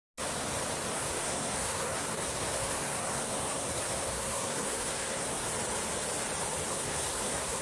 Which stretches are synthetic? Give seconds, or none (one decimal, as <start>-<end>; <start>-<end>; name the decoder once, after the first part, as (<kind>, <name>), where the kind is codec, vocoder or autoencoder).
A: 0.9-5.5 (codec, SNAC); 6.7-7.6